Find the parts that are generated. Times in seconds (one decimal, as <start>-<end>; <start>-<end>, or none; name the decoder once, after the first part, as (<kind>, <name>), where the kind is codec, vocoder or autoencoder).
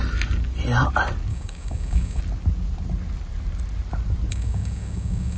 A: 1.3-2.2 (codec, DAC); 4.3-5.4